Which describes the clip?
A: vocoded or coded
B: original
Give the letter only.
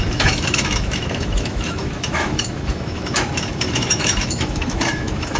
A